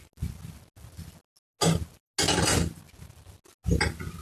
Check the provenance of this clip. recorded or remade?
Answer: recorded